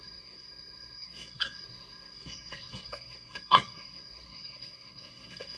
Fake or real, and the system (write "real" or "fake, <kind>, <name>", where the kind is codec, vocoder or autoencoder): fake, codec, SNAC